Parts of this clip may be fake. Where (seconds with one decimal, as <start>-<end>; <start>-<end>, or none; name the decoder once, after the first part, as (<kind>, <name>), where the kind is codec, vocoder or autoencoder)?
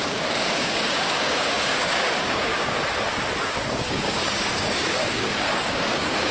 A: 0.0-2.5 (codec, DAC); 3.4-6.3